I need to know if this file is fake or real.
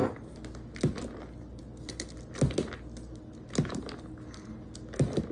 real